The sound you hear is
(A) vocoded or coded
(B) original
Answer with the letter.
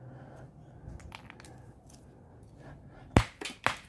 B